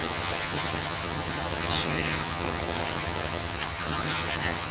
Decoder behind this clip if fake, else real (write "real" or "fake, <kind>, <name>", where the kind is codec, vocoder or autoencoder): fake, vocoder, HiFi-GAN